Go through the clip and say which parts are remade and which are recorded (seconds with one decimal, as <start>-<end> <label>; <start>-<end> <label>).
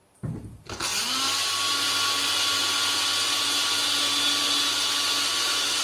0.0-5.8 recorded